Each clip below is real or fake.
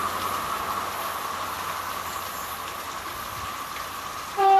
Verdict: real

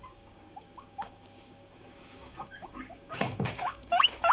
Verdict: fake